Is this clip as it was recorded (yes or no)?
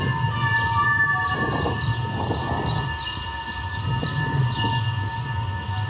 yes